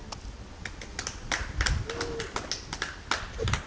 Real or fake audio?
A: real